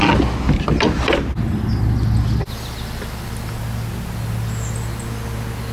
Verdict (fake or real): real